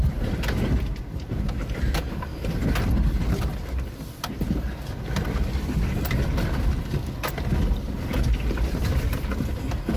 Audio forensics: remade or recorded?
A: recorded